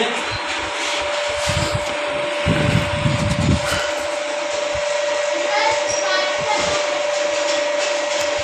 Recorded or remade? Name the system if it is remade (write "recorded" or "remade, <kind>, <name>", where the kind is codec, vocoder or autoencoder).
recorded